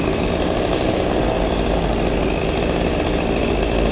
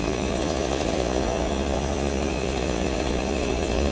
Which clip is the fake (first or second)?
second